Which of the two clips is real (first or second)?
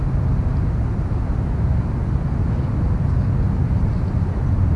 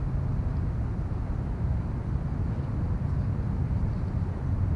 first